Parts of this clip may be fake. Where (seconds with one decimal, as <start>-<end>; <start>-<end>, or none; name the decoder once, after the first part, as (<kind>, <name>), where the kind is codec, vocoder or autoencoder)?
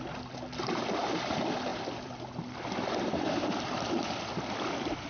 1.7-5.1 (vocoder, BigVGAN v2)